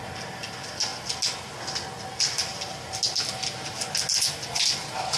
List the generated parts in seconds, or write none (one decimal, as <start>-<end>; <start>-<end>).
none